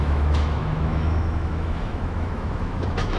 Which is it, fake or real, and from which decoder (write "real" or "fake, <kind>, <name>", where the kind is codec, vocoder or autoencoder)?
fake, autoencoder, DAC-VAE